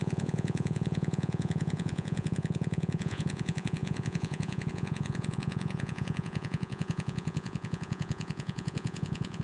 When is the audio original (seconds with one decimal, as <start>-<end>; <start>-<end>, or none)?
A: none